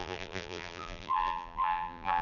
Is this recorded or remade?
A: remade